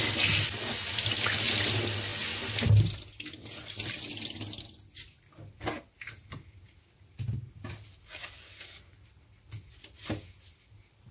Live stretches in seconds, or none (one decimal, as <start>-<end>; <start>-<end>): 0.0-11.1